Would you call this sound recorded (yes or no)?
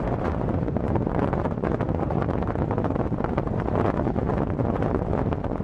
no